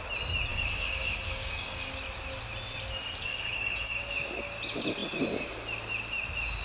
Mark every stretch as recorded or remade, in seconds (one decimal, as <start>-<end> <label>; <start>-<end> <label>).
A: 0.0-0.5 recorded; 0.5-1.9 remade; 1.9-3.3 recorded; 3.3-4.0 remade; 4.0-6.6 recorded